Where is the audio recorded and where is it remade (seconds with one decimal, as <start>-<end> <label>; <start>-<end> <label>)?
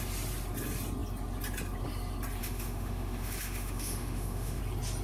0.0-2.4 recorded; 2.4-4.6 remade; 4.6-5.0 recorded